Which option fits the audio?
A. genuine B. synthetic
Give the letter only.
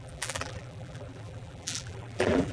B